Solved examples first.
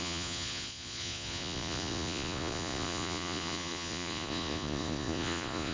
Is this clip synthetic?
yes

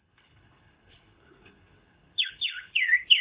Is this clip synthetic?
yes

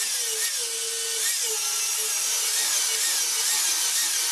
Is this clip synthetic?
no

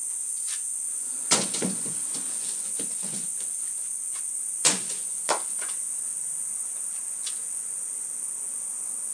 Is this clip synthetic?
yes